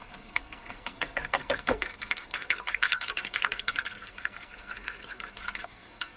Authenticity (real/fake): fake